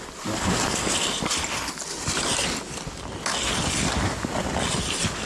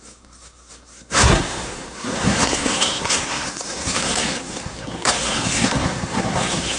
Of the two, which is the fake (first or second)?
second